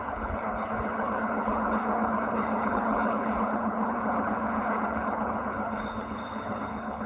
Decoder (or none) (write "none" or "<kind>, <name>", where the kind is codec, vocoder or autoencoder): codec, HILCodec